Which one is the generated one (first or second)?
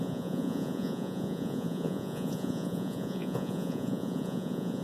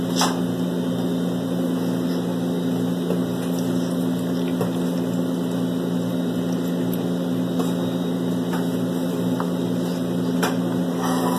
first